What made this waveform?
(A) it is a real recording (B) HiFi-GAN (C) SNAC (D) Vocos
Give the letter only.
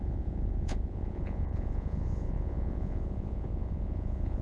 D